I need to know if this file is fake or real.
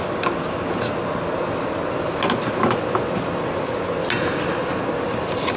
real